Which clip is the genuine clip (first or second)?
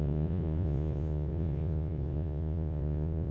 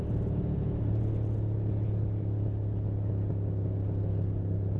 second